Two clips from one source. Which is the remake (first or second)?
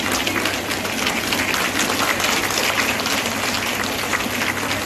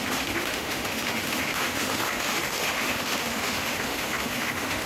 second